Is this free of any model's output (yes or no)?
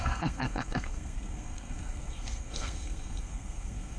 no